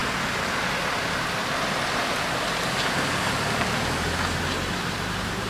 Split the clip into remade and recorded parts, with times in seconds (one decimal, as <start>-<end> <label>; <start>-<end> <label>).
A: 0.0-1.0 recorded; 1.0-1.4 remade; 1.4-4.7 recorded; 4.7-5.5 remade